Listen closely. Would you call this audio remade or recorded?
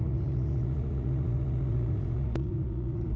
remade